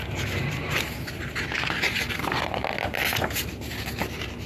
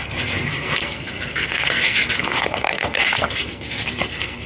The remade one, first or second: second